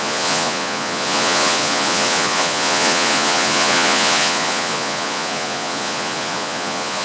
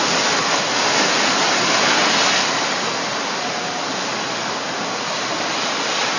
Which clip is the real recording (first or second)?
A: second